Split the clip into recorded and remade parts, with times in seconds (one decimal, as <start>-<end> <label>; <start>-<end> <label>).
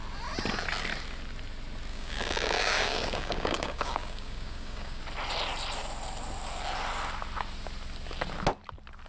0.0-1.9 recorded; 1.9-5.0 remade; 5.0-9.1 recorded